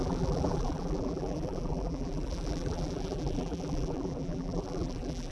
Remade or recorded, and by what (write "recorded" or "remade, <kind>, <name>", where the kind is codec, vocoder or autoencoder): remade, vocoder, BigVGAN v2